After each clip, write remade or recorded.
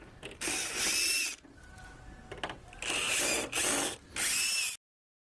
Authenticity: recorded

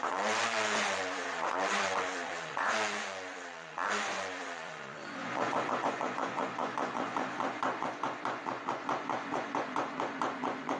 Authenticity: remade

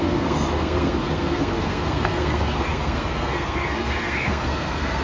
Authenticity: remade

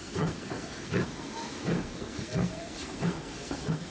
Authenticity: remade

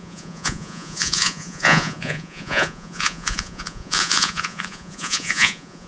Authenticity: remade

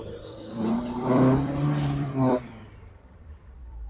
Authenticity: remade